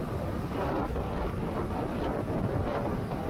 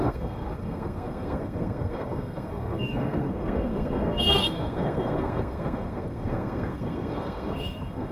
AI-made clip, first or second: second